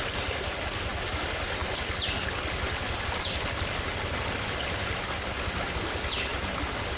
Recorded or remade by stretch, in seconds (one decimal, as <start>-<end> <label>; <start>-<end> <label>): 0.0-7.0 recorded